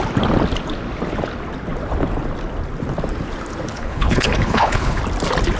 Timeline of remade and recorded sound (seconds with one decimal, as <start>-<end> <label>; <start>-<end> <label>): 0.0-3.7 recorded; 3.7-5.0 remade; 5.0-5.6 recorded